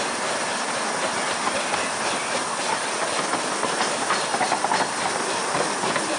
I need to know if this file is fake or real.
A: real